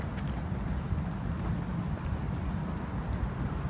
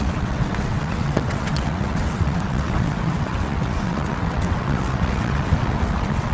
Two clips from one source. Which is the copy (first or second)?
second